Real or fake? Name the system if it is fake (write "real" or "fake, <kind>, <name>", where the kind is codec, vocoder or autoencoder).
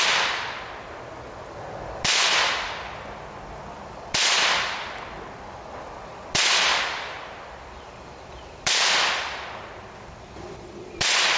real